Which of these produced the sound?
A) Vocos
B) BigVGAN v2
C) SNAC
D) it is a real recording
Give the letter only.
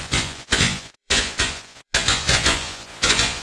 A